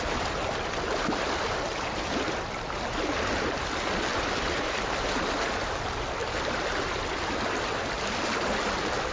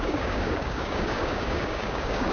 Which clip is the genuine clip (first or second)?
first